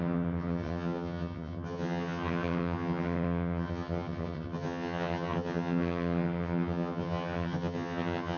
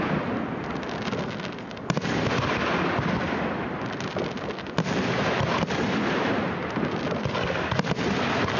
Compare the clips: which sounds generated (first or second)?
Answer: first